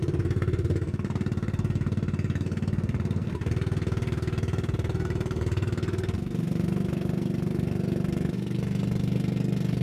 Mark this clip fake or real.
fake